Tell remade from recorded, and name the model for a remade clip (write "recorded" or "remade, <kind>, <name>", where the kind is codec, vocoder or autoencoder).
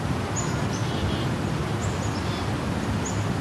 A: recorded